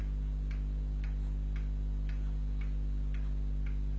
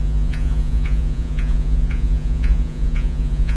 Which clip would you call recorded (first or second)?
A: first